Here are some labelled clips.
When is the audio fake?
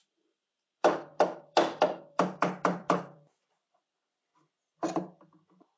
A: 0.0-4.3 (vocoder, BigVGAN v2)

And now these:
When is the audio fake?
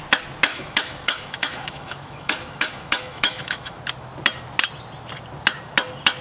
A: 0.5-3.8 (autoencoder, DAC-VAE)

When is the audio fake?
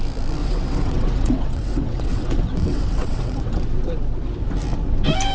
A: 0.4-3.6 (vocoder, WaveNeXt)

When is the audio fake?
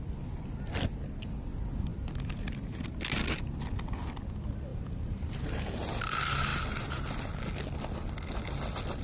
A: 1.9-2.8 (vocoder, BigVGAN v2); 4.7-5.4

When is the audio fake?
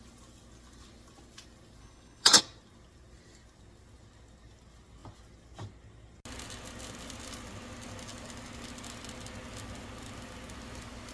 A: 1.8-2.4 (codec, HILCodec)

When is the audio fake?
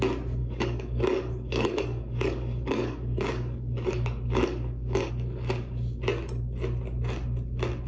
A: 0.4-5.1 (codec, DAC)